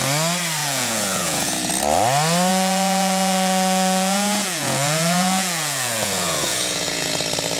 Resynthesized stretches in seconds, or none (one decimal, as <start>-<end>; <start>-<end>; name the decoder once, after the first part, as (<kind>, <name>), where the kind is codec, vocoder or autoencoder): 0.6-1.7 (vocoder, Vocos); 2.5-7.1